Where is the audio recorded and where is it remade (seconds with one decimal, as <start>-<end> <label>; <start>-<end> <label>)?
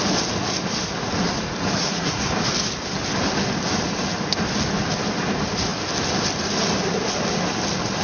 0.0-1.8 recorded; 1.8-2.3 remade; 2.3-8.0 recorded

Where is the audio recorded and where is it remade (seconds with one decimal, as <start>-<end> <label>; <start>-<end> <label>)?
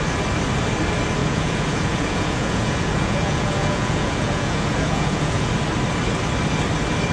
0.0-1.2 recorded; 1.2-5.5 remade; 5.5-7.1 recorded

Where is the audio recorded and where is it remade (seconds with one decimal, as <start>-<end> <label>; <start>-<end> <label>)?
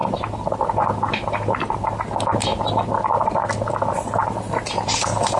0.0-5.4 recorded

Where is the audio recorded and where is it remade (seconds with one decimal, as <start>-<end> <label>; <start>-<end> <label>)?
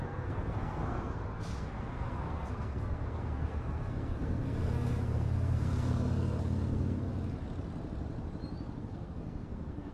0.0-7.1 remade; 7.1-8.8 recorded; 8.8-9.9 remade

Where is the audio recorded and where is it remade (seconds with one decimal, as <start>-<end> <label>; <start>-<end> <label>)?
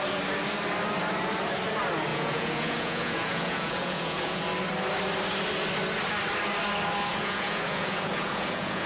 0.0-2.1 recorded; 2.1-4.4 remade; 4.4-7.1 recorded; 7.1-8.9 remade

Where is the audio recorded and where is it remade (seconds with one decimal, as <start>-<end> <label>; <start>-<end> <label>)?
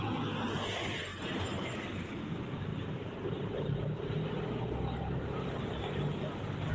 0.0-6.7 recorded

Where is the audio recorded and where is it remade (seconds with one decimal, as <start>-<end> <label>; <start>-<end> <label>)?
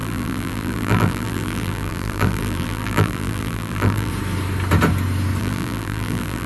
0.0-4.1 remade; 4.1-5.4 recorded; 5.4-6.5 remade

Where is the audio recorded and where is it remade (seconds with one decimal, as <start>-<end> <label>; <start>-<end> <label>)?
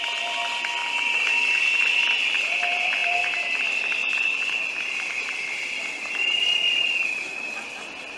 0.0-4.0 recorded; 4.0-4.7 remade; 4.7-8.2 recorded